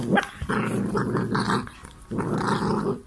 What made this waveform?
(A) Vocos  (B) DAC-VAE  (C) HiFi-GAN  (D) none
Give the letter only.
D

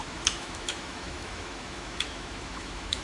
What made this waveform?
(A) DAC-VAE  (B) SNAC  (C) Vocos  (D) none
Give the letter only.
A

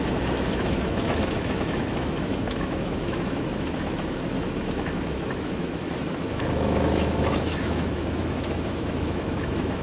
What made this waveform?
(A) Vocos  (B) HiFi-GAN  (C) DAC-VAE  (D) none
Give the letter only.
C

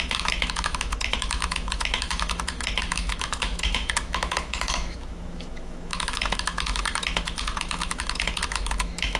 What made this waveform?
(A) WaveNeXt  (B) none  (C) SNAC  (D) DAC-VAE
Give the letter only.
D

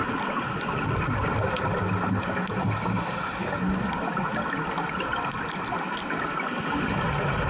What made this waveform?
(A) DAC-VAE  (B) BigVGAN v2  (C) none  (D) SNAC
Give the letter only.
C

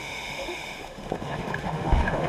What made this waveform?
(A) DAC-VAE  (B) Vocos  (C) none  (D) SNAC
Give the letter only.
A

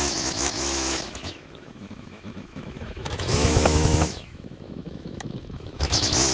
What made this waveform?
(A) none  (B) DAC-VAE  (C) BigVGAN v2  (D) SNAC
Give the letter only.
B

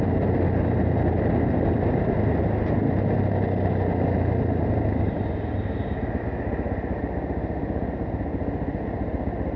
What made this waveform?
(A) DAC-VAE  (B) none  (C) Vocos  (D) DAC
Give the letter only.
B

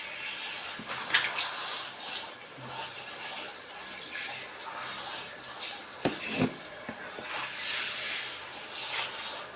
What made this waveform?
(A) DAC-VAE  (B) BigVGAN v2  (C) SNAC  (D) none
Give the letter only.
D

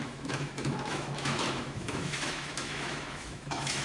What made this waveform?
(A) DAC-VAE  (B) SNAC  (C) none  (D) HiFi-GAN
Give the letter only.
A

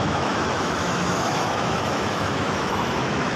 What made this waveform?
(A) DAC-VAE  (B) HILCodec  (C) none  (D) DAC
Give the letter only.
A